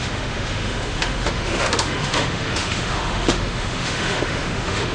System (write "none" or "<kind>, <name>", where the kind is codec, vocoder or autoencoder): autoencoder, DAC-VAE